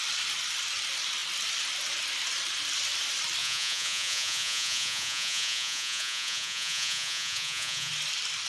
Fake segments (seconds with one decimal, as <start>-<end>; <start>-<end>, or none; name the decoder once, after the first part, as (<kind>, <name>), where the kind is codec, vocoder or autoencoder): 3.4-7.9 (vocoder, Vocos)